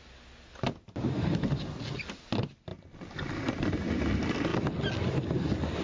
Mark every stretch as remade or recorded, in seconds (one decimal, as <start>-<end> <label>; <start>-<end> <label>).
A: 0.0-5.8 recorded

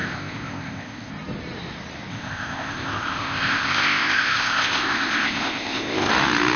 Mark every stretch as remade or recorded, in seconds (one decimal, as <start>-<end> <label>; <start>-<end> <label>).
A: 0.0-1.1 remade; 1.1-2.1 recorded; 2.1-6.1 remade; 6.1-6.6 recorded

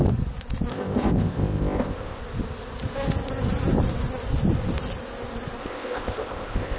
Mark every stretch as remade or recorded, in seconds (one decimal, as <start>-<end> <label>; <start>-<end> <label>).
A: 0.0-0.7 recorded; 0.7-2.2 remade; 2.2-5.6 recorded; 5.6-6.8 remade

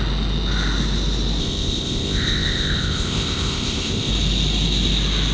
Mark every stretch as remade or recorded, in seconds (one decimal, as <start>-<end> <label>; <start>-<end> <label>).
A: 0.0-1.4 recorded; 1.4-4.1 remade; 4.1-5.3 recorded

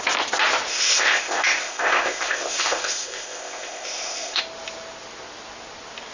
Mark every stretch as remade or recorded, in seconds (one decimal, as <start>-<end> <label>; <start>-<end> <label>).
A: 0.0-0.7 recorded; 0.7-4.4 remade; 4.4-6.1 recorded